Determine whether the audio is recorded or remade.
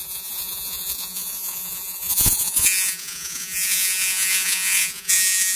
remade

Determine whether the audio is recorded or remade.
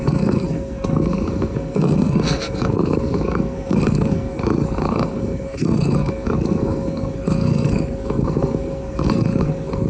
remade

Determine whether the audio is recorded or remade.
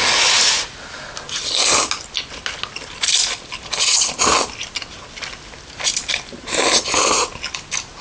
recorded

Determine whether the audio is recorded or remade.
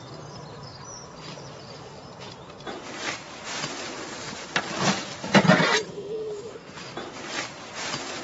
recorded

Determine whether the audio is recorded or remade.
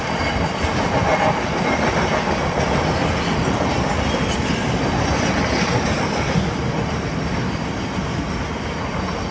recorded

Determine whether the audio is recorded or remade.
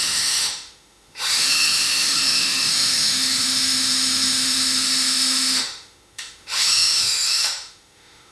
remade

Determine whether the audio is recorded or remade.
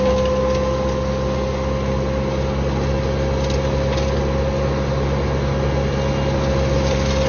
recorded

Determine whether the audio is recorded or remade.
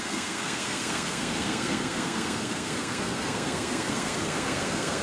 remade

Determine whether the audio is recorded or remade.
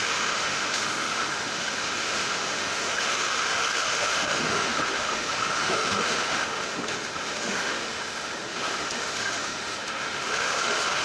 remade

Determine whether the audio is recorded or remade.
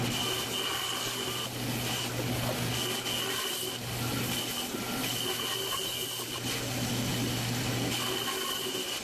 recorded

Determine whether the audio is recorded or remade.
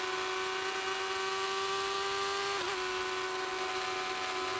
recorded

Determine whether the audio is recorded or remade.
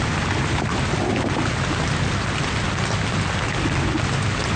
recorded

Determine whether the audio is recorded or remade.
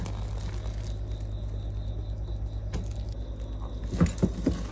recorded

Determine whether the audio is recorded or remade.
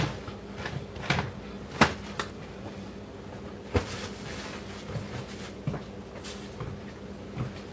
recorded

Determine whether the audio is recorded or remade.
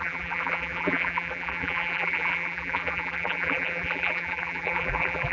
remade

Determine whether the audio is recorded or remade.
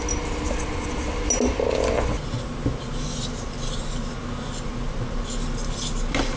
recorded